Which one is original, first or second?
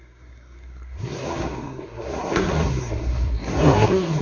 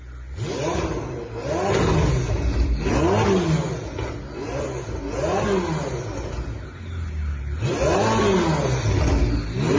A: second